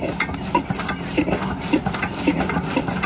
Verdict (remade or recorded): recorded